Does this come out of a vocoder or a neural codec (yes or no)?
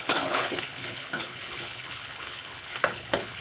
yes